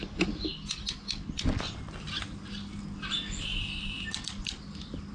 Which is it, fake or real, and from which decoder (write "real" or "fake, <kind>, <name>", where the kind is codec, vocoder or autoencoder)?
real